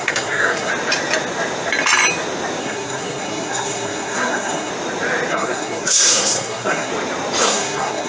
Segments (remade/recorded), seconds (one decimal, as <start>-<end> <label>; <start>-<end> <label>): 0.0-0.7 remade; 0.7-2.6 recorded; 2.6-4.7 remade; 4.7-5.3 recorded; 5.3-6.9 remade; 6.9-7.4 recorded; 7.4-8.1 remade